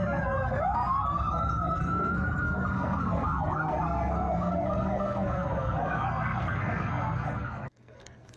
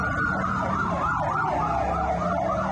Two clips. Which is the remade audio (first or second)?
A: first